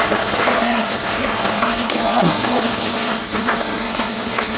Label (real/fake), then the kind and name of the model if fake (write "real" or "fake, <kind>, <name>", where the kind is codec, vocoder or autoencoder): fake, codec, SNAC